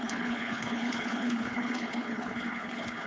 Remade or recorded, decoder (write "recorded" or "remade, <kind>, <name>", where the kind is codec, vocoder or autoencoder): remade, codec, HILCodec